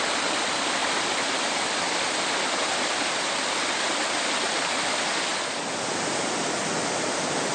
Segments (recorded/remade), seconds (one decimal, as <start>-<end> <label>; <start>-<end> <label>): 0.0-7.5 recorded